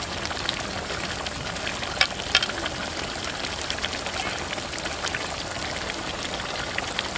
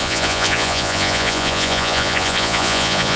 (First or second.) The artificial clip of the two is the second